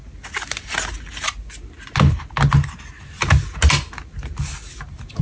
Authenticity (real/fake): real